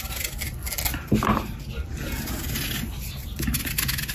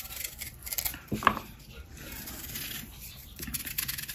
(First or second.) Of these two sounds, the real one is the first